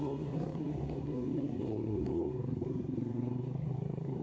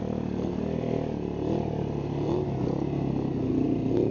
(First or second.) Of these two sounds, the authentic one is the second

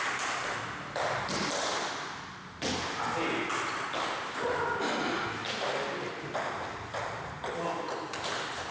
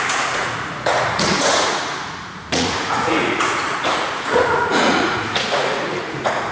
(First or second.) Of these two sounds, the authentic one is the first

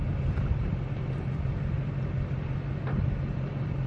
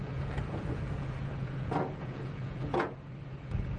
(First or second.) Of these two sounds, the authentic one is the first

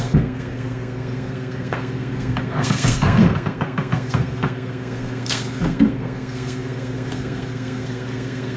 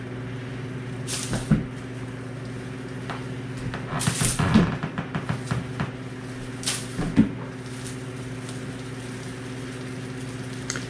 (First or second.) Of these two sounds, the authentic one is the second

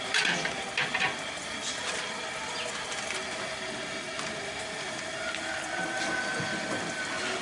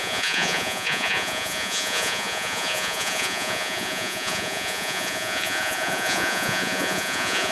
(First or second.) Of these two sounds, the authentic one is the first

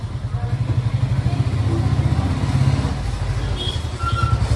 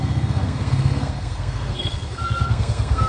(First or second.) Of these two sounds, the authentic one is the first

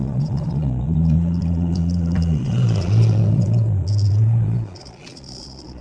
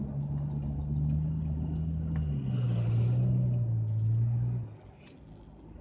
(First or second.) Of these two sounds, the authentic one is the second